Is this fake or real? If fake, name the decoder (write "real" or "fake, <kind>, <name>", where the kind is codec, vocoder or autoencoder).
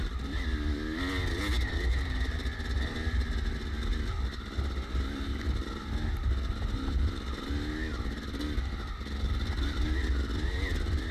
real